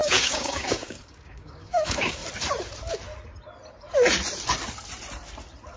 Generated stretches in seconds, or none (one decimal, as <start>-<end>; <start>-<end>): 0.0-2.2